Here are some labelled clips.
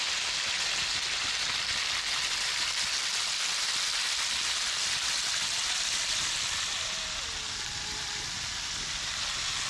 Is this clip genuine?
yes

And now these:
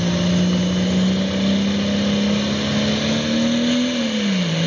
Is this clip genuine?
yes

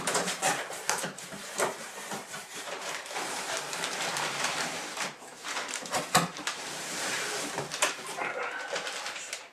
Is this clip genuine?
no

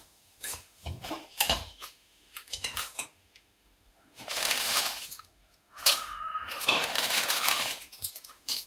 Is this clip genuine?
no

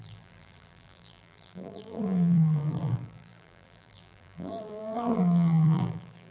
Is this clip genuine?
no